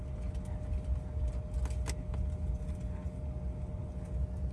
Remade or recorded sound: recorded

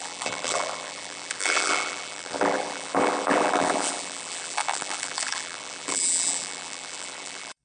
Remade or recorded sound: remade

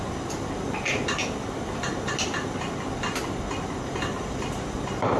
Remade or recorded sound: remade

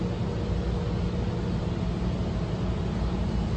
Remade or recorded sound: recorded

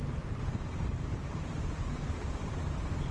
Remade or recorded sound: remade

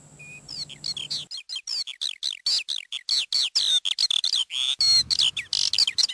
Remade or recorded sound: recorded